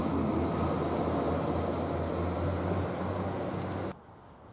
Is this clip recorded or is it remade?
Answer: recorded